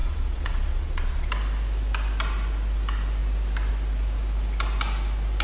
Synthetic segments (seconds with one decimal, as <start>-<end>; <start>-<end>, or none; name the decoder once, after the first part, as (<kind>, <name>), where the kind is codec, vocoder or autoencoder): 0.0-1.3 (vocoder, Vocos)